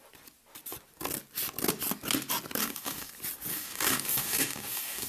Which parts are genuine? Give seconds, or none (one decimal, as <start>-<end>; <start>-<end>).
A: 0.0-2.6; 3.1-3.5